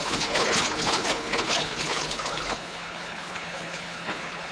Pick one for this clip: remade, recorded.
remade